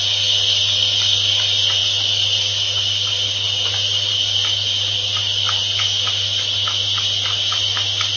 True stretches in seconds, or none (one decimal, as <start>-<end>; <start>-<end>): 0.0-8.2